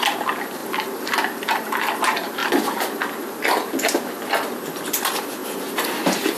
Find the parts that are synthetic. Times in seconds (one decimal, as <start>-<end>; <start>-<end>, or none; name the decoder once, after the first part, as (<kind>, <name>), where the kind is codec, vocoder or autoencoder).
0.0-6.4 (vocoder, BigVGAN v2)